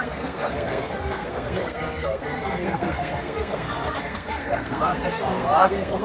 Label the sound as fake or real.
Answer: fake